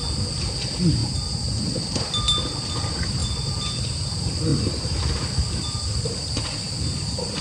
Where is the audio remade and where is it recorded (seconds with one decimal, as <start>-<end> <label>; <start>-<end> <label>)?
0.0-7.4 recorded